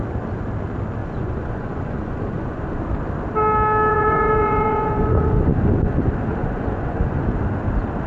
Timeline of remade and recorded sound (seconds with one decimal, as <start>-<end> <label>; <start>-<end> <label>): 0.0-1.0 recorded; 1.0-2.8 remade; 2.8-3.9 recorded; 3.9-6.0 remade; 6.0-6.4 recorded; 6.4-7.2 remade; 7.2-8.1 recorded